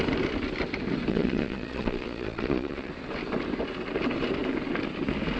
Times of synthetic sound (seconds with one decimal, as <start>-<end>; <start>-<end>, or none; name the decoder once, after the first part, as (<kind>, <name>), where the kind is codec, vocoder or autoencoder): 1.1-2.9 (vocoder, Vocos)

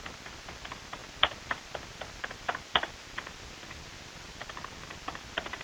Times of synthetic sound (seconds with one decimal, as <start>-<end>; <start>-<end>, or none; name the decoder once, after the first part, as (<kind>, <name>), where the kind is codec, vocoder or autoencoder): none

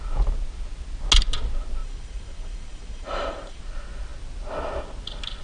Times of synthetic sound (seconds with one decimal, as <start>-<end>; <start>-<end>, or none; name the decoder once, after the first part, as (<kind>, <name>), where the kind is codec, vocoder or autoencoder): 1.8-3.6 (vocoder, BigVGAN v2)

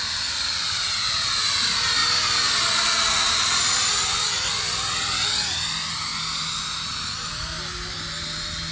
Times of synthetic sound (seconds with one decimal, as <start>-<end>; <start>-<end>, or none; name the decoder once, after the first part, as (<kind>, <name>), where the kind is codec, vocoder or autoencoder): none